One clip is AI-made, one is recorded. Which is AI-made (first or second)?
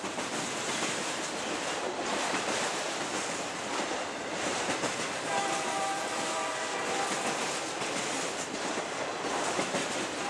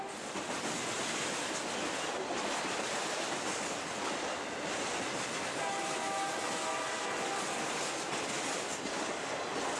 first